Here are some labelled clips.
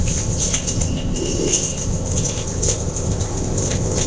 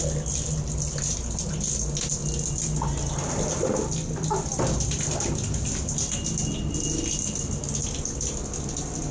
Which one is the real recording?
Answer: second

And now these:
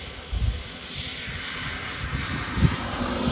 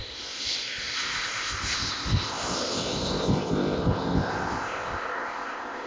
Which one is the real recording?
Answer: first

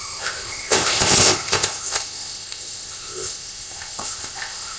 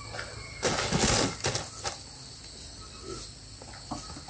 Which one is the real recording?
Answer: second